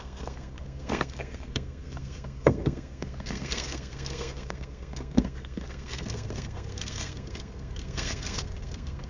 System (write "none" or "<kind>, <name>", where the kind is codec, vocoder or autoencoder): codec, SNAC